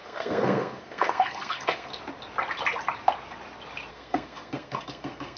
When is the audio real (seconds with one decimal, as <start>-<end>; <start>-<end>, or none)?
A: 1.9-3.9